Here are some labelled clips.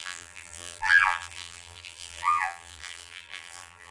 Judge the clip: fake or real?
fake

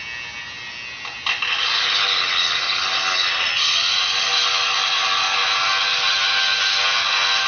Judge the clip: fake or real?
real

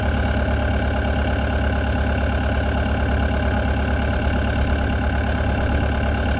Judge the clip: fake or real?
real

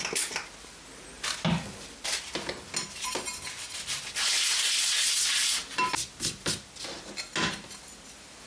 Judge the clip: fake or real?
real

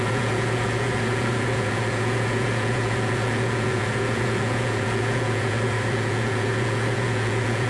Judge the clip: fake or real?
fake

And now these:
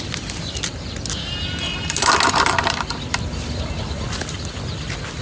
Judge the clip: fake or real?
real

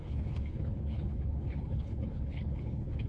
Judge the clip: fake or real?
fake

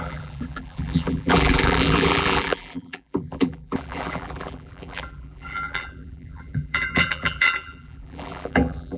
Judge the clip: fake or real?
fake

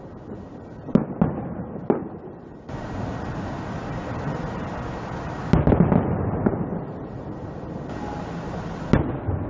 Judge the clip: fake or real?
real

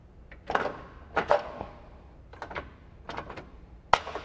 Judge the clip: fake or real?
real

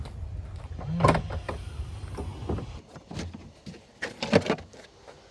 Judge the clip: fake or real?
real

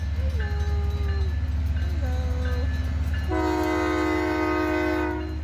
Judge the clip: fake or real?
real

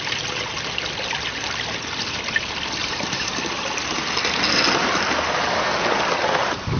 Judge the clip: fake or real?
real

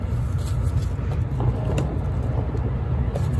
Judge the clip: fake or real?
real